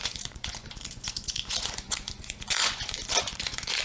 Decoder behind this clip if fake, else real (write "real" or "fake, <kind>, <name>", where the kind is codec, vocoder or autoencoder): fake, vocoder, Vocos